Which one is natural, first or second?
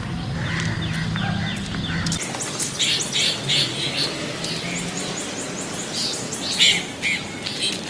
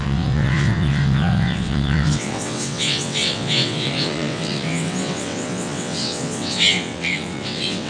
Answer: first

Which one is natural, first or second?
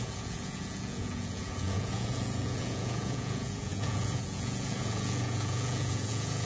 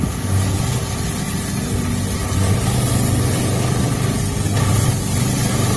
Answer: second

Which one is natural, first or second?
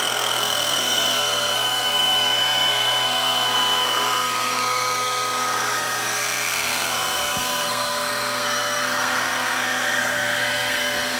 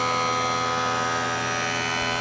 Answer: second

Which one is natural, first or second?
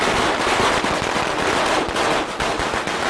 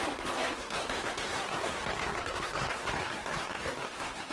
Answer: first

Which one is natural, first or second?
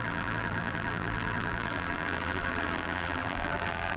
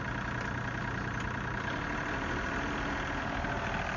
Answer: second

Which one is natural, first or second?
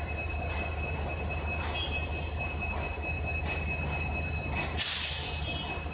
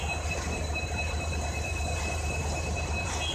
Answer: first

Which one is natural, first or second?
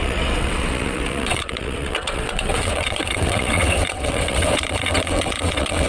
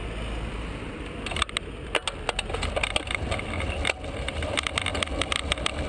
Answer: second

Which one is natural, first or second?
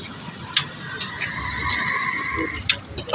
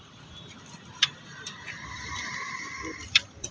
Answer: first